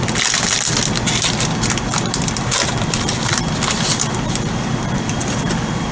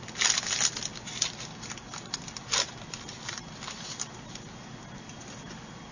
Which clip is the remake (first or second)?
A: first